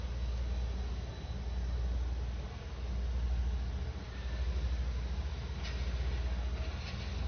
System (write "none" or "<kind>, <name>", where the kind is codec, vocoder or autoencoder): none